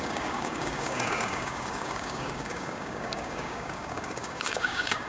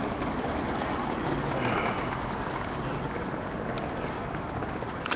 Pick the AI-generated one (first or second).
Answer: first